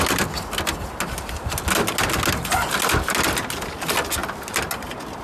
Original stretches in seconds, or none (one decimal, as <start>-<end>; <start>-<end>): 0.0-5.2